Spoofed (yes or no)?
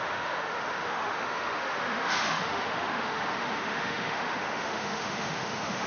yes